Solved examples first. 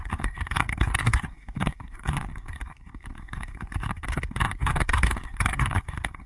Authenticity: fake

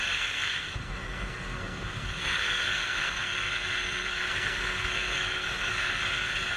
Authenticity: fake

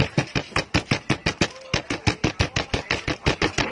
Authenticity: real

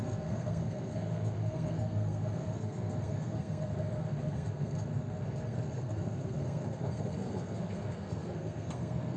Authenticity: fake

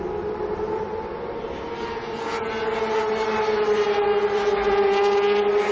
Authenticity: real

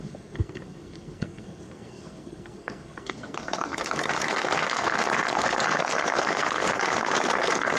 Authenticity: fake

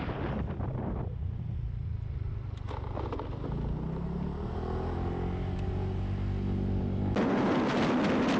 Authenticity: real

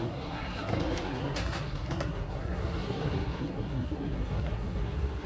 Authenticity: fake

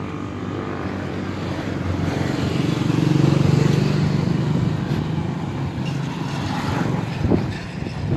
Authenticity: real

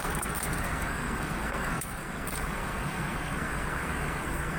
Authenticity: fake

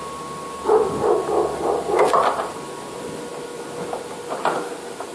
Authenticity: real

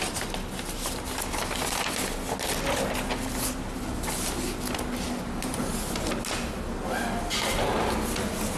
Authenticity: real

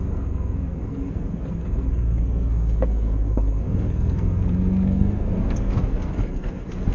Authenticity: fake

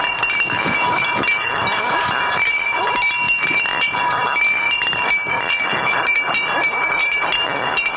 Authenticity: real